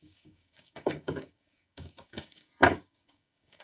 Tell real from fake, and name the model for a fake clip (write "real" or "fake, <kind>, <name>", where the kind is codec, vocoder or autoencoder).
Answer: fake, codec, DAC